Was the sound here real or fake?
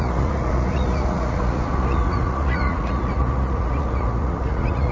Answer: fake